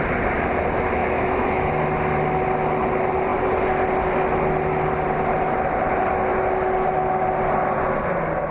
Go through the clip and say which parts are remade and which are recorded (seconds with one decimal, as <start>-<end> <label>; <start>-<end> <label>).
0.0-1.0 recorded; 1.0-1.7 remade; 1.7-8.5 recorded